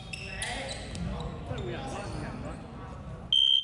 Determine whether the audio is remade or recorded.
recorded